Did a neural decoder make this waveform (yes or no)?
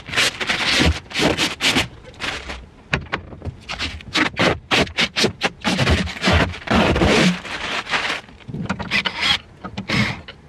no